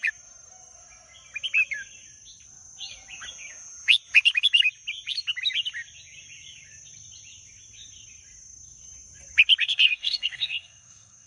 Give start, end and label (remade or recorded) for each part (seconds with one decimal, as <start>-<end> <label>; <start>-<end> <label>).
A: 0.0-9.6 recorded; 9.6-11.3 remade